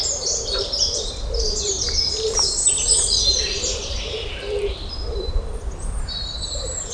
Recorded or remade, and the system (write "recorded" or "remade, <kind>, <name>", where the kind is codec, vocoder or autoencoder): remade, vocoder, BigVGAN v2